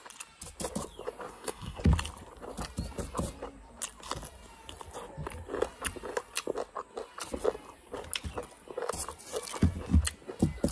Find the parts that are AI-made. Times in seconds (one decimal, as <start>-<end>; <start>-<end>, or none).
1.3-1.8